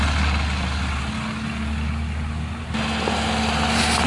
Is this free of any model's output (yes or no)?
yes